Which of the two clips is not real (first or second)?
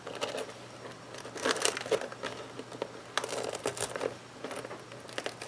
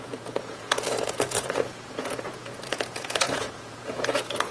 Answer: second